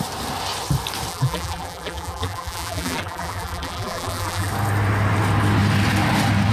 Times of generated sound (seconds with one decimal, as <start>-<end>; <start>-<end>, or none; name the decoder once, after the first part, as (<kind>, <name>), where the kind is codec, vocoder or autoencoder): 1.1-4.5 (vocoder, BigVGAN v2)